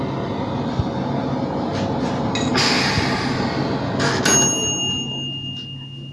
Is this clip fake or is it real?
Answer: real